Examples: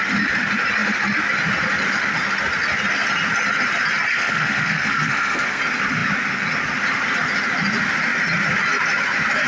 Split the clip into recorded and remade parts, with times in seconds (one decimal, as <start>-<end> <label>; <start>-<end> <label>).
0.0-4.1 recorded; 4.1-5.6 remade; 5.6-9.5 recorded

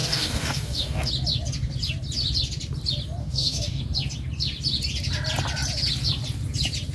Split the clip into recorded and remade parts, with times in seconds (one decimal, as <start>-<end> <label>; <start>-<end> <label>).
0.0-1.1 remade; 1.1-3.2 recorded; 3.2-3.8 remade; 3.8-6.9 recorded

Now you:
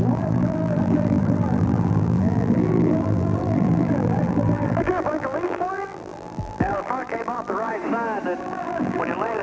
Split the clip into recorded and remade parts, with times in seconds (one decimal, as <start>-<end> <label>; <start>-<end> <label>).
0.0-7.7 remade; 7.7-8.4 recorded; 8.4-9.4 remade

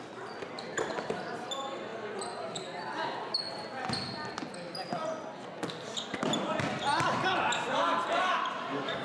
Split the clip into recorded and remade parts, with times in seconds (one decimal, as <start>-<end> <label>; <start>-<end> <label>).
0.0-9.0 recorded

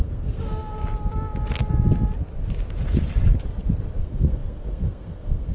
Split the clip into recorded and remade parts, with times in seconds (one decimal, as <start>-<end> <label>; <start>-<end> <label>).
0.0-0.8 remade; 0.8-4.0 recorded; 4.0-5.5 remade

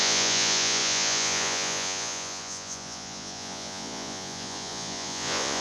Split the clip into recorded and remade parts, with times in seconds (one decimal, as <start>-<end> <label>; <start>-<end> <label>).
0.0-5.6 remade

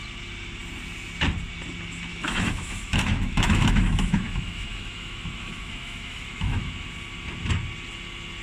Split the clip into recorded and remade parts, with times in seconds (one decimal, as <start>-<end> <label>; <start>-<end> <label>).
0.0-2.1 recorded; 2.1-6.7 remade; 6.7-8.4 recorded

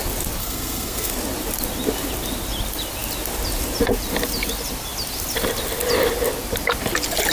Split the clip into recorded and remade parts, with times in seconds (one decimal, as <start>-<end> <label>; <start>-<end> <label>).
0.0-0.4 recorded; 0.4-1.1 remade; 1.1-7.3 recorded